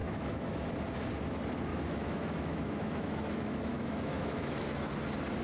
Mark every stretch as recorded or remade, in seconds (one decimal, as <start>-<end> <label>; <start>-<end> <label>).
0.0-0.7 remade; 0.7-1.7 recorded; 1.7-4.9 remade; 4.9-5.4 recorded